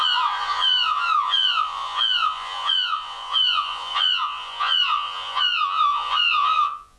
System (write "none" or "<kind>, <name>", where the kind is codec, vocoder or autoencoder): vocoder, Vocos